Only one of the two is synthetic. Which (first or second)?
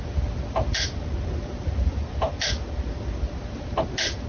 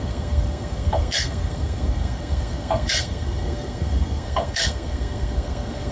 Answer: second